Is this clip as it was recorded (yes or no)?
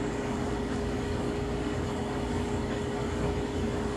no